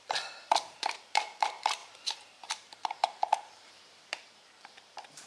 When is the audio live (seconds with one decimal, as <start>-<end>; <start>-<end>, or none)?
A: none